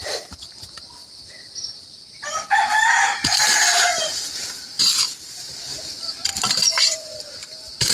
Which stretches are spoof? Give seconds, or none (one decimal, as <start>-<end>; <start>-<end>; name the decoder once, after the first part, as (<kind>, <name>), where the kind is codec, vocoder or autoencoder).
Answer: 0.0-1.0 (vocoder, BigVGAN v2); 1.9-5.7; 6.5-7.9